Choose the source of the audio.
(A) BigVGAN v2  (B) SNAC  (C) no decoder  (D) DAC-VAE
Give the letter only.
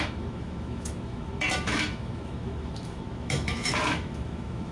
D